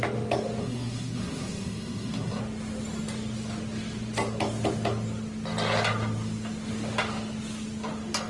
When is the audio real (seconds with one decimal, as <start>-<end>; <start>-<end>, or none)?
0.0-0.6; 2.4-8.3